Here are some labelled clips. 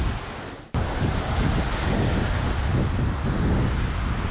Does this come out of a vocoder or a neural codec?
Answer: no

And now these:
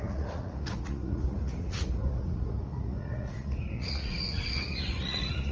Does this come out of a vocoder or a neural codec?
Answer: yes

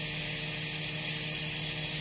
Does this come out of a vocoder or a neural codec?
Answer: no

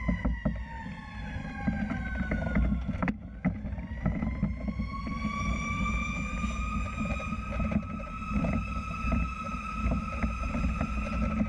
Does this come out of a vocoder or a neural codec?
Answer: no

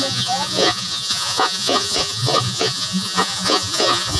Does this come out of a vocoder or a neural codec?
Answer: yes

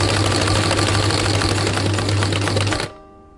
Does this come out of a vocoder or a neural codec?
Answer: no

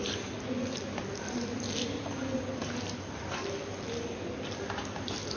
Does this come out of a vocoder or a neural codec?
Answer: no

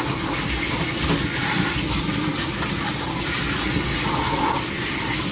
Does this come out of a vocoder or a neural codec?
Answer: no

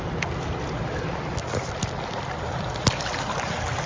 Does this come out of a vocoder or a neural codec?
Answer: no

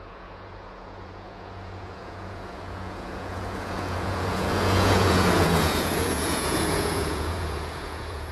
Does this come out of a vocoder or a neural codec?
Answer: yes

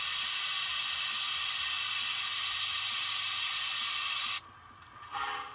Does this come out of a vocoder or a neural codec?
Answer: no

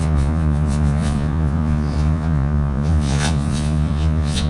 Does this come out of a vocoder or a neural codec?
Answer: yes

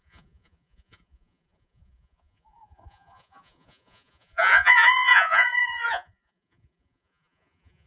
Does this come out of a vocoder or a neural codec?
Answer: yes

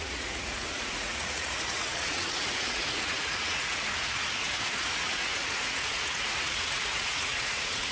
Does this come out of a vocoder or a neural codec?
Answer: yes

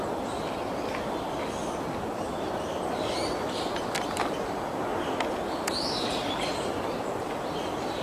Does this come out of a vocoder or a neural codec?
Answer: no